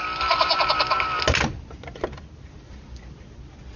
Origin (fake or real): real